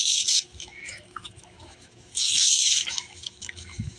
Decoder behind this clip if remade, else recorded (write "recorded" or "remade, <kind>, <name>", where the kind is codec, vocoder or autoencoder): remade, autoencoder, DAC-VAE